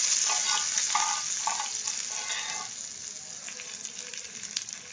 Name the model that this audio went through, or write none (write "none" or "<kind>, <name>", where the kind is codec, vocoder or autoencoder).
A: none